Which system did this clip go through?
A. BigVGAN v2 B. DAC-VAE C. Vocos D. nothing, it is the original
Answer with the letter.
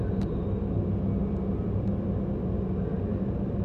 D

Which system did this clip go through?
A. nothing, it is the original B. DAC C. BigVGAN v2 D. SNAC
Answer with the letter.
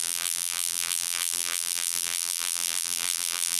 C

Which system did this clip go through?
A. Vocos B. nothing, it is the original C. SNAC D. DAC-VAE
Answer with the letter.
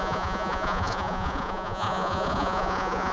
A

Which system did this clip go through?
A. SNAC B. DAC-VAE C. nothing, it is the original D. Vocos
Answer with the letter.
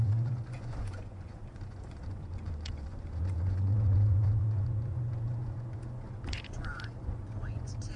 D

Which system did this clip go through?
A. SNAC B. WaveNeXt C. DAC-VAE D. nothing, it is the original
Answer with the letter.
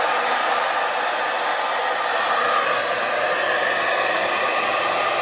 D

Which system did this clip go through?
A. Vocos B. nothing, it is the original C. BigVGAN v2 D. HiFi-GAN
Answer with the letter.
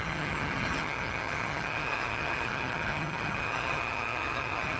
D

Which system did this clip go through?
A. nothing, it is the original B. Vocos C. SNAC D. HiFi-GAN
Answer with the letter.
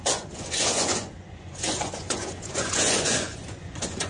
B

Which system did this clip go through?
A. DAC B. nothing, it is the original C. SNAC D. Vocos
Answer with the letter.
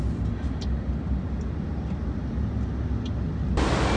B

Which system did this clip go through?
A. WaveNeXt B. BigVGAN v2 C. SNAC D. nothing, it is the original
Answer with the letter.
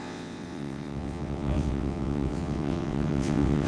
A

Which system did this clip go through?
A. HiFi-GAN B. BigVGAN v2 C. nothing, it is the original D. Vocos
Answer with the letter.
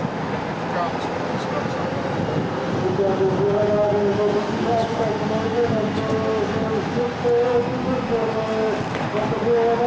C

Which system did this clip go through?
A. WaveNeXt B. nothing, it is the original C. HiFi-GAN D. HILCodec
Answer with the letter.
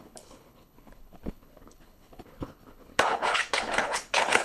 D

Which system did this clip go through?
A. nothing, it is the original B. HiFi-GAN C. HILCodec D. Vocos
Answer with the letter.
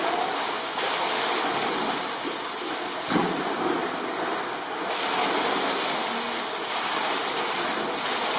A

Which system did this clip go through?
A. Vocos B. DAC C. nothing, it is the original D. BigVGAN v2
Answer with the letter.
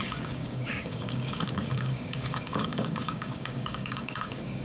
B